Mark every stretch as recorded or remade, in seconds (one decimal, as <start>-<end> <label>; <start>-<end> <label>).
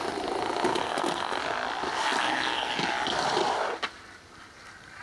0.0-0.7 recorded; 0.7-1.4 remade; 1.4-2.2 recorded; 2.2-2.7 remade; 2.7-5.0 recorded